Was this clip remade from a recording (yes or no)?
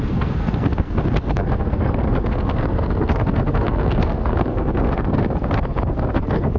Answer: yes